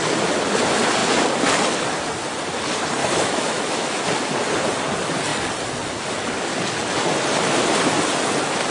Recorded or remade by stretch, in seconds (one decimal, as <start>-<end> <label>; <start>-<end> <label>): 0.0-3.0 recorded; 3.0-4.1 remade; 4.1-8.7 recorded